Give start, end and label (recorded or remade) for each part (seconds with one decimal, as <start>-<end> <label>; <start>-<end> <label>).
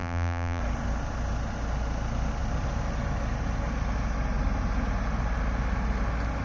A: 0.0-0.6 remade; 0.6-6.4 recorded